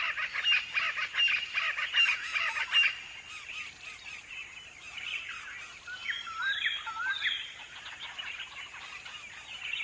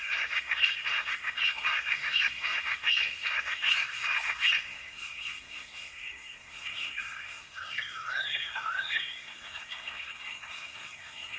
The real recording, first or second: first